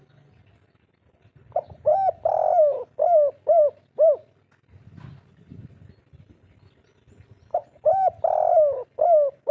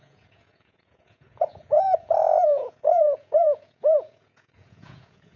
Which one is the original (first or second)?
first